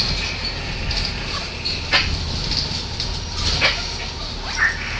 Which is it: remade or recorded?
recorded